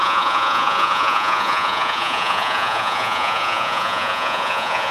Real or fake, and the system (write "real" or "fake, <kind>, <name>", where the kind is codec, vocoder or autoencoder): fake, vocoder, Vocos